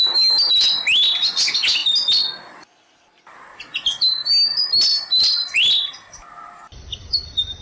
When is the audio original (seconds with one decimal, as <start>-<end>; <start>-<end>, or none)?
0.0-7.6